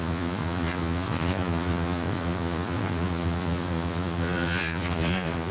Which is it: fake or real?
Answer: fake